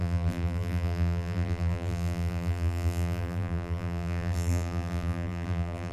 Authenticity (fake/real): fake